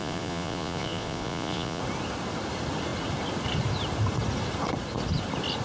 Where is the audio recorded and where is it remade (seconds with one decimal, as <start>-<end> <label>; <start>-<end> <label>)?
0.0-1.8 remade; 1.8-5.6 recorded